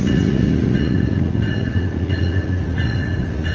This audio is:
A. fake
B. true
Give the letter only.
A